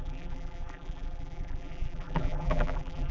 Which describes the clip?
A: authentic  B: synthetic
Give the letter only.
B